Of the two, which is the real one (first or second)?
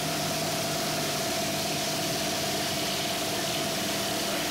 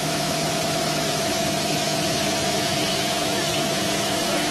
first